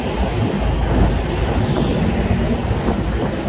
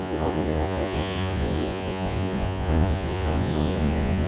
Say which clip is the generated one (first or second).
second